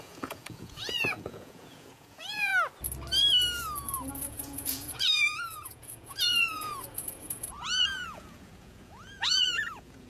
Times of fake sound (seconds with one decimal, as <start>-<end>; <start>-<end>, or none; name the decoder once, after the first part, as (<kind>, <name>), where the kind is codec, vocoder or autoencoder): 0.0-2.5 (vocoder, Vocos); 4.1-10.1